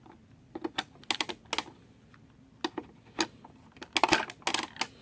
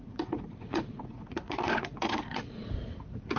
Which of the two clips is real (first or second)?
first